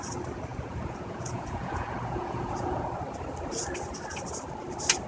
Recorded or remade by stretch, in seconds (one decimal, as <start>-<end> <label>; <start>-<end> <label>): 0.0-0.5 recorded; 0.5-2.9 remade; 2.9-5.1 recorded